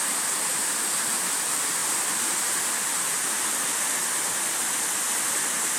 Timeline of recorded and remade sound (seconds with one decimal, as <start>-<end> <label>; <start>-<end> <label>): 0.0-5.8 recorded